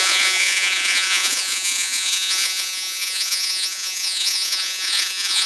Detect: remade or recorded remade